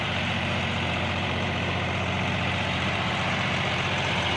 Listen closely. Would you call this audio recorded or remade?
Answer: remade